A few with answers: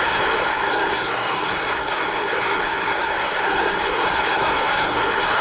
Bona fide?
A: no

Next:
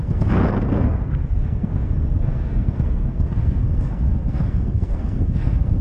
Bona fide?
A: no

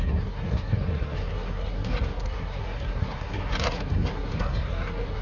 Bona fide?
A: no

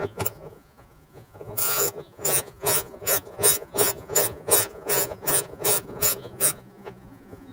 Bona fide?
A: no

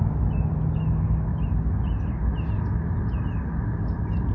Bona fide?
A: yes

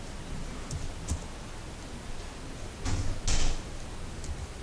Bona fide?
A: yes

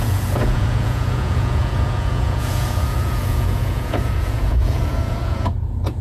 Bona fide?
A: no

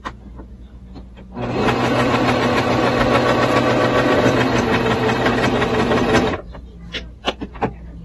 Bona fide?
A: yes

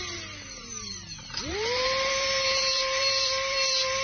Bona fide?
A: no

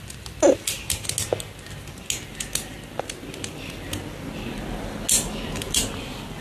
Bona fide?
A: yes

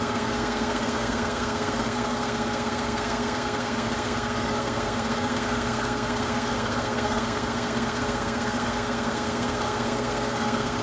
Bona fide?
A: no